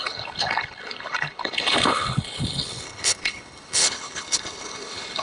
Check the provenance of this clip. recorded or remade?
remade